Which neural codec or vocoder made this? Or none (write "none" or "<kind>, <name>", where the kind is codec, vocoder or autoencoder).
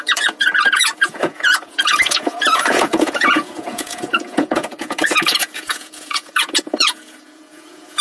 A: vocoder, Vocos